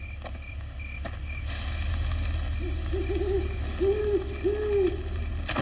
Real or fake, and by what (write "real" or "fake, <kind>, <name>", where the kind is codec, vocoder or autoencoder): real